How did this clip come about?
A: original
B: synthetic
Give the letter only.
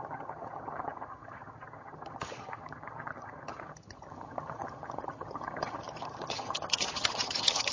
B